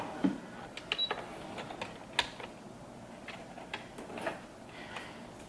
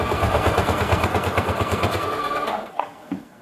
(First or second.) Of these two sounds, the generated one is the second